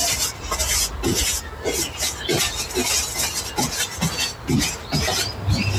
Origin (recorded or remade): recorded